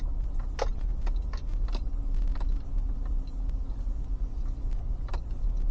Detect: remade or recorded recorded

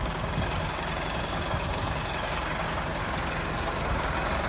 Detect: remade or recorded remade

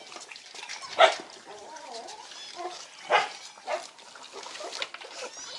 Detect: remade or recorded recorded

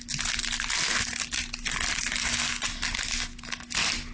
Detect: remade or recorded recorded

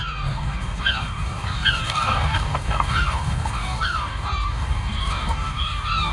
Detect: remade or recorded remade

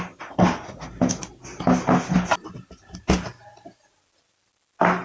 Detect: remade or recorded recorded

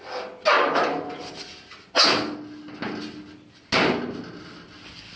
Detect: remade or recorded recorded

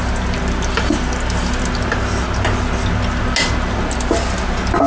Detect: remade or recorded recorded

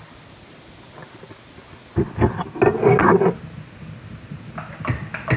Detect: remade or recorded recorded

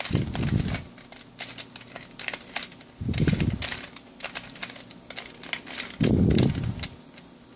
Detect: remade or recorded recorded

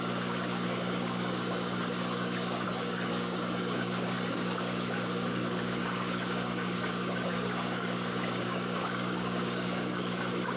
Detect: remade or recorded remade